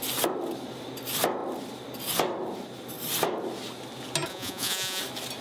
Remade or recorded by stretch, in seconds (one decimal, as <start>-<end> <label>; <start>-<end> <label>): 0.0-4.3 recorded; 4.3-5.0 remade; 5.0-5.4 recorded